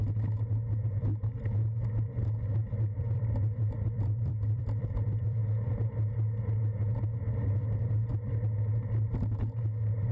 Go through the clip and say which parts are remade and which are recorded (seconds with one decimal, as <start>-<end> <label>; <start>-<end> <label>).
0.0-3.0 recorded; 3.0-5.4 remade; 5.4-7.5 recorded; 7.5-8.1 remade; 8.1-10.1 recorded